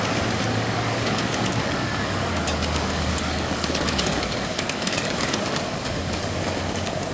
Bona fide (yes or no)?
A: no